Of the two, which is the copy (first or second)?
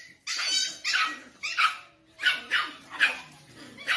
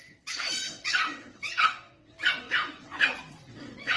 second